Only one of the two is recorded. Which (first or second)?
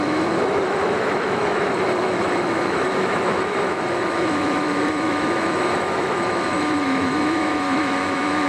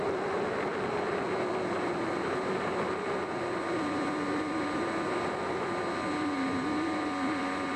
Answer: second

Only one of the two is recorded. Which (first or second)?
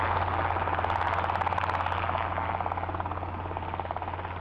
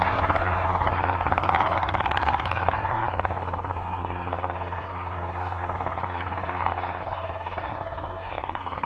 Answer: first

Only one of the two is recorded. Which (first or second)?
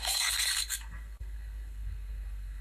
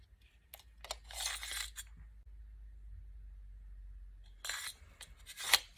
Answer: second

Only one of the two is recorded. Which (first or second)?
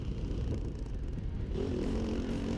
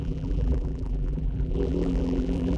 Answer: first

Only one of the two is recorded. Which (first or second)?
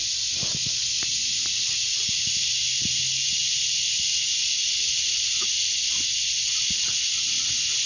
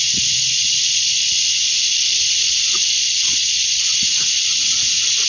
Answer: first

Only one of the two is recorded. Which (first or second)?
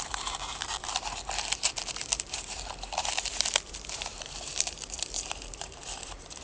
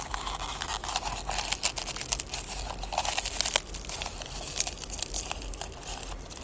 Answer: second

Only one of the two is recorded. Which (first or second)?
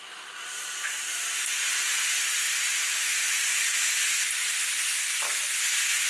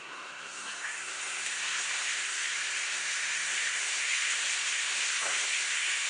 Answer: first